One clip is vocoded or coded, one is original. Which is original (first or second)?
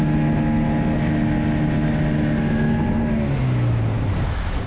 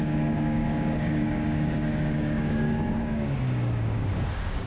first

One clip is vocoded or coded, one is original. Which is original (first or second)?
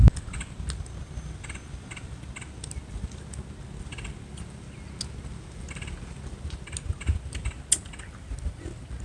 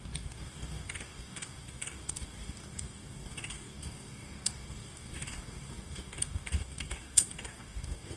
first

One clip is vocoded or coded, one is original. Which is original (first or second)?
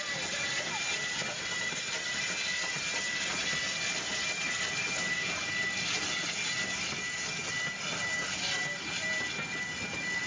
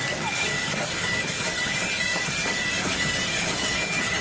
first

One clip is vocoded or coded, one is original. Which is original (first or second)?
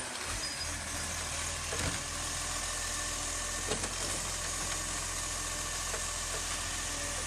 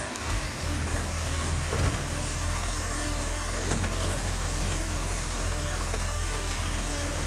first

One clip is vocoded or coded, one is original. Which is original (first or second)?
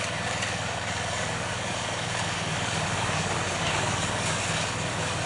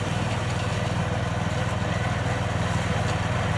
second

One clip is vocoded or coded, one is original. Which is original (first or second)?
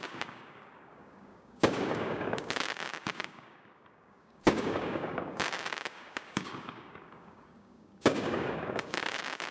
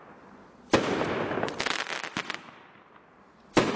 second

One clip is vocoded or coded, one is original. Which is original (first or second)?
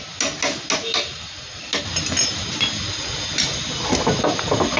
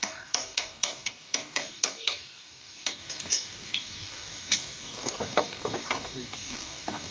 first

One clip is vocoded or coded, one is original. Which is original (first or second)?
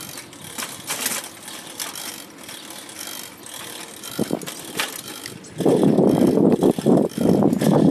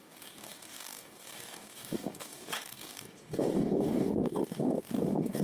first